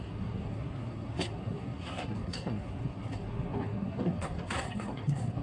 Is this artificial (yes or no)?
yes